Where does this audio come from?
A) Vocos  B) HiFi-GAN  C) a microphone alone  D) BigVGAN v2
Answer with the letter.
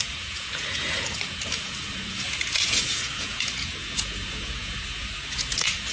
A